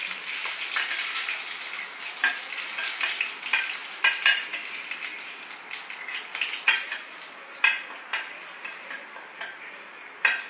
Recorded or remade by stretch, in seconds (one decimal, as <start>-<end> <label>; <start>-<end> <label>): 0.0-10.5 recorded